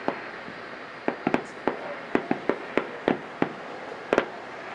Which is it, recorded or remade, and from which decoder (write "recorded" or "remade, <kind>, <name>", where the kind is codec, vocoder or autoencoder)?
recorded